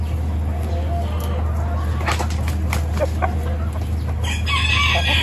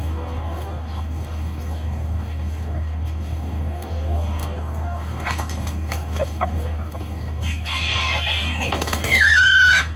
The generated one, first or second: second